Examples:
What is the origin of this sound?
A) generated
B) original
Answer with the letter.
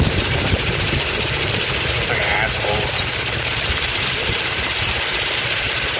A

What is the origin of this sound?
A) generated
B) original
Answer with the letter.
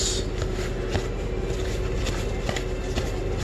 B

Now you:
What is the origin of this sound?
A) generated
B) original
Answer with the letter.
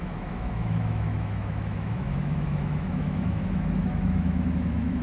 A